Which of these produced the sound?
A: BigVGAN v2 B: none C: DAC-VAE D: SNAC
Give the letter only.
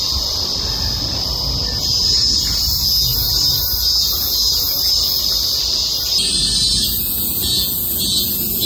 B